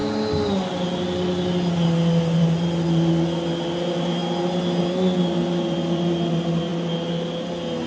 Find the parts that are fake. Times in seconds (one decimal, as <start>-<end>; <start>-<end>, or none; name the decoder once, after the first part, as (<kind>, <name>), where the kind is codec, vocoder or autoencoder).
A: none